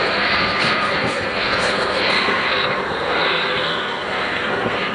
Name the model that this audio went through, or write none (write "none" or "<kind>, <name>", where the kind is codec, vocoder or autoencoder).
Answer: codec, SNAC